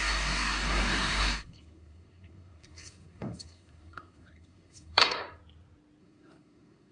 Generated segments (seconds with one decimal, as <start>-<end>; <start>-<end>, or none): 0.0-5.2; 6.0-6.9